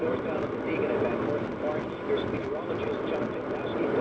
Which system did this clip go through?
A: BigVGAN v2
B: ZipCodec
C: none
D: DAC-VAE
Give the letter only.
C